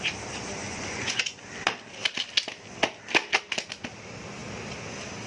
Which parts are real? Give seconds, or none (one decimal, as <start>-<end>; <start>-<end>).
0.0-0.6; 1.5-5.3

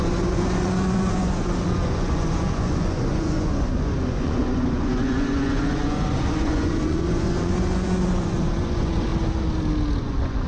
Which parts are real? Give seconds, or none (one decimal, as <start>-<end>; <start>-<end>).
9.1-10.0

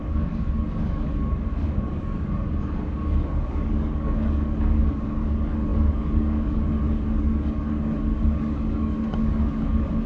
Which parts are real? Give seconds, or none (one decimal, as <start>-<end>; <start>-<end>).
none

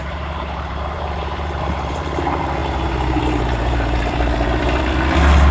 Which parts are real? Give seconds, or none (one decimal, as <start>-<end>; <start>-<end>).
2.2-2.6; 4.8-5.5

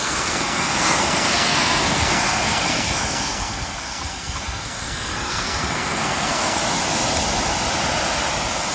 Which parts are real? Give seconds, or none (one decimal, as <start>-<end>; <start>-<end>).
6.6-8.7

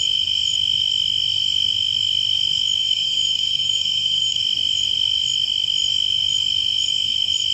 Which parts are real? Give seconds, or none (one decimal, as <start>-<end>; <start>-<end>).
0.0-2.8; 4.4-7.5

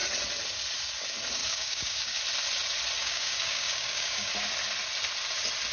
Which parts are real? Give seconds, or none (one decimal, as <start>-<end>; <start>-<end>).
0.0-1.4; 2.2-3.0; 4.3-5.7

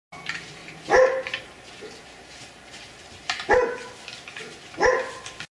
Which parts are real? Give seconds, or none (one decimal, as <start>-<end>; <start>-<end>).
0.0-0.6; 3.5-5.5